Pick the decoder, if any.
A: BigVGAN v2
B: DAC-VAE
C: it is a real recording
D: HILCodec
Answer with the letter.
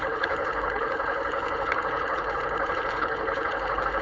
D